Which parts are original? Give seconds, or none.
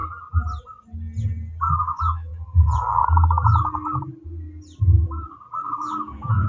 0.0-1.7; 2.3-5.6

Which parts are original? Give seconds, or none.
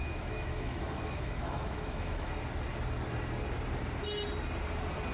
2.3-5.1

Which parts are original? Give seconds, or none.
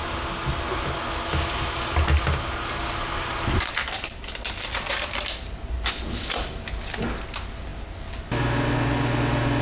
0.0-9.6